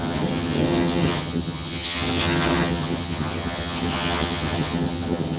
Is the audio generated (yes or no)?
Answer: yes